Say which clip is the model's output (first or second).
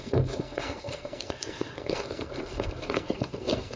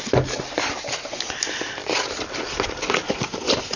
first